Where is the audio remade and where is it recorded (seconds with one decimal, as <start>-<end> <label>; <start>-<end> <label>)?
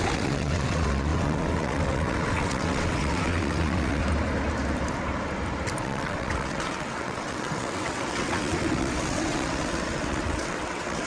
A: 0.0-4.0 remade; 4.0-5.8 recorded; 5.8-11.1 remade